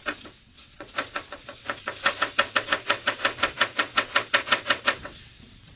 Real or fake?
fake